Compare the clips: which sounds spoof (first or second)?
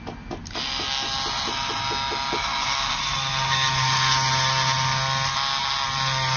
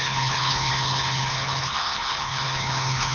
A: second